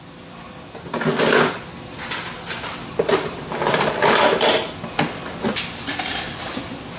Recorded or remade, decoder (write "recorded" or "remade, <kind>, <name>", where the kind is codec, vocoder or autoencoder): recorded